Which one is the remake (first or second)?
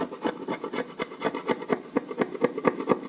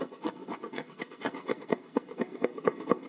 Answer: second